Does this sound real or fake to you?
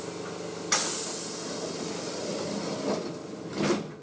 real